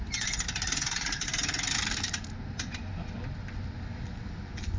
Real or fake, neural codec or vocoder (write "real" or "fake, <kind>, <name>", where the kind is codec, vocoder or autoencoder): real